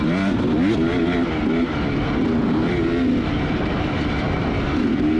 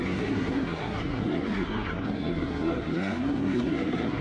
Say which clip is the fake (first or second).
second